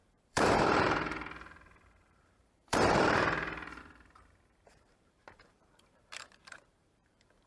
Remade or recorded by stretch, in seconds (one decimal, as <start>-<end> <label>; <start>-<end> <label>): 0.0-7.5 remade